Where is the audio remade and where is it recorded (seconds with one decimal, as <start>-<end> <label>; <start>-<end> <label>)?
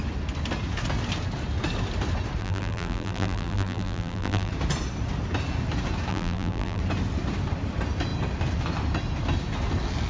0.0-2.4 recorded; 2.4-4.5 remade; 4.5-6.1 recorded; 6.1-6.8 remade; 6.8-10.1 recorded